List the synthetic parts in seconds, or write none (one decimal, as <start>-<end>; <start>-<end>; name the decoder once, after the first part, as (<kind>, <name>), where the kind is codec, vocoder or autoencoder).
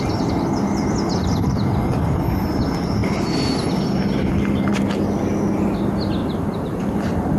3.0-3.8 (vocoder, BigVGAN v2); 6.2-6.8